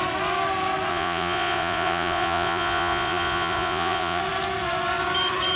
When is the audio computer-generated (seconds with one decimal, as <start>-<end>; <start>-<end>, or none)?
0.9-4.2